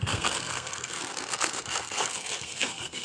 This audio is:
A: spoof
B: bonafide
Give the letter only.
A